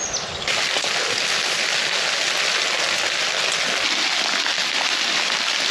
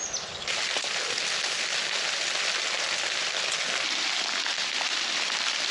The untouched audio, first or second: first